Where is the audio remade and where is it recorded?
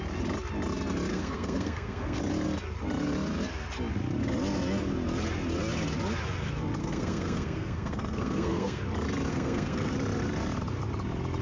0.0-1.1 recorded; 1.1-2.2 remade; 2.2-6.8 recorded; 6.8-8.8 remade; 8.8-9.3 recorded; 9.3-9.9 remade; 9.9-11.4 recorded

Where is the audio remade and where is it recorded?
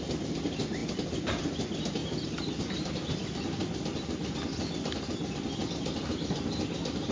0.0-7.1 recorded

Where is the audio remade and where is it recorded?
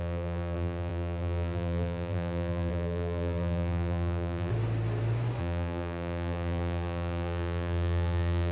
0.0-4.5 remade; 4.5-5.4 recorded; 5.4-8.5 remade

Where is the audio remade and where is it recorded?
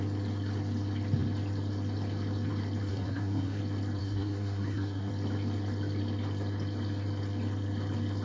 0.0-2.9 recorded; 2.9-3.6 remade; 3.6-4.0 recorded; 4.0-5.1 remade; 5.1-8.2 recorded